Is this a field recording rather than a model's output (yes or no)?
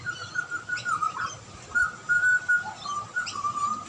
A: yes